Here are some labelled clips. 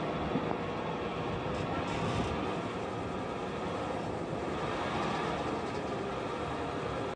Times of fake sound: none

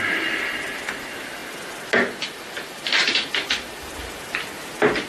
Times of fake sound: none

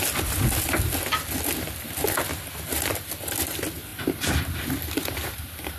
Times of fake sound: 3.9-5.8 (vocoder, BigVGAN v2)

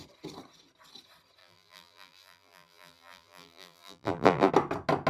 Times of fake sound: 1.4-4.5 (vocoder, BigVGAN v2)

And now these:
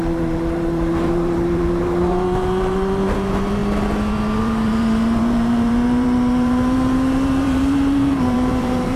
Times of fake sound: 0.0-3.6 (vocoder, BigVGAN v2); 4.4-9.0